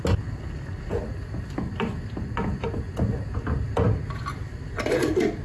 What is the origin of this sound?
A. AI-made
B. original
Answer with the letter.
B